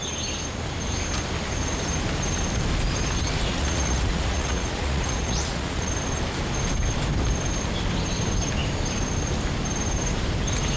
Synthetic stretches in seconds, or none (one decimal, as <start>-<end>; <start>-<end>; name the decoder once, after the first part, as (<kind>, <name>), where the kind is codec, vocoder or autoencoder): 3.5-5.9 (vocoder, Vocos)